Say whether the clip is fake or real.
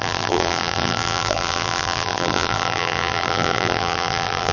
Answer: fake